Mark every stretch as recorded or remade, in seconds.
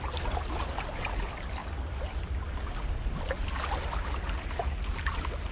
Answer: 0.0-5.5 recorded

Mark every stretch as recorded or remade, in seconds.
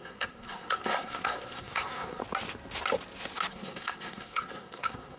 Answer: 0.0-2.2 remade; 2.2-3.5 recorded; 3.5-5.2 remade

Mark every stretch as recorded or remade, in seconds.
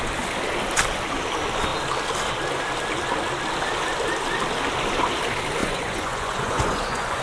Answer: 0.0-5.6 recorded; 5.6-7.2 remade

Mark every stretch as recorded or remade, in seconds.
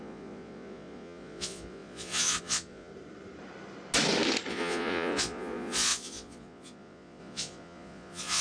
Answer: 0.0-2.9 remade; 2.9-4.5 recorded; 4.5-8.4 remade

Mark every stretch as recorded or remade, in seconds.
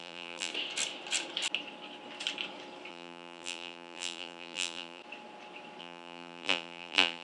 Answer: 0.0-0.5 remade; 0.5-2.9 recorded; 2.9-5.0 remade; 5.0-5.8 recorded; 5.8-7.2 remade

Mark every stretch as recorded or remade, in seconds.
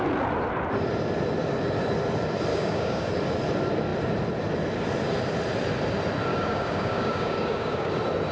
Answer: 0.0-2.5 recorded; 2.5-3.1 remade; 3.1-6.3 recorded; 6.3-7.9 remade; 7.9-8.3 recorded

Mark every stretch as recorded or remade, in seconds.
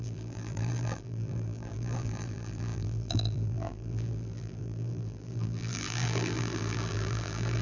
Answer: 0.0-7.6 remade